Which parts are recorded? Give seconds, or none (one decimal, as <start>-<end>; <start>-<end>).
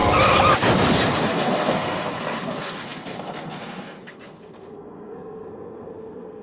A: 0.0-1.1